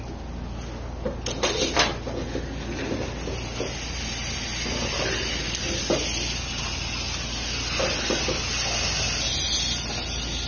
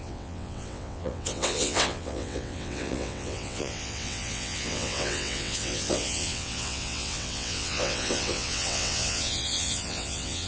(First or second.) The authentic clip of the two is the first